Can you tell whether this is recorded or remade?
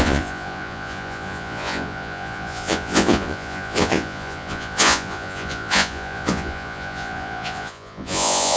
remade